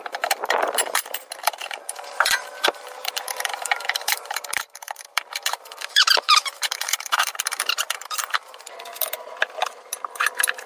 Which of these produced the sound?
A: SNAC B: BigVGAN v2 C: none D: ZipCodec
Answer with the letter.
B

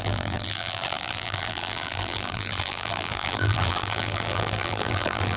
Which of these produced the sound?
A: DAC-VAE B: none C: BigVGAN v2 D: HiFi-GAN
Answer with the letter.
C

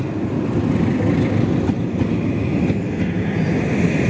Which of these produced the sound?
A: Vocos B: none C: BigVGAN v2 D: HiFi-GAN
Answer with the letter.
B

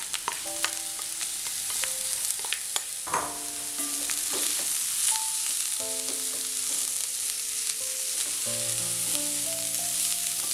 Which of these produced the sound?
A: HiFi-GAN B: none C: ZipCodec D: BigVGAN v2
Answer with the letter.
B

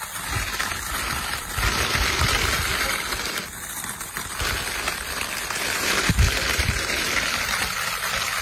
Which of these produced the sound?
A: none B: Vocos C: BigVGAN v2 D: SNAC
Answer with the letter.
C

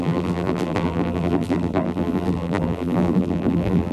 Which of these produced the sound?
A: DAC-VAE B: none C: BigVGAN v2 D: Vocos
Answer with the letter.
C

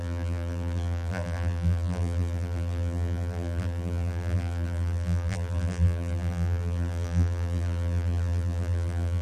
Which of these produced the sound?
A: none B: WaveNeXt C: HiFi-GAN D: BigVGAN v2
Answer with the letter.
D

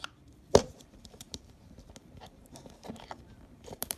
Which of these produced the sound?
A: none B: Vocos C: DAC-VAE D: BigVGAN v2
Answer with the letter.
D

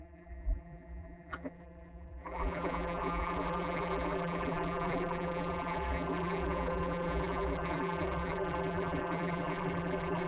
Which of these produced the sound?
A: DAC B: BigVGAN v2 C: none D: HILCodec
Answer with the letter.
B